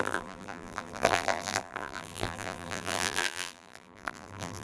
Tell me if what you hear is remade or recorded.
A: remade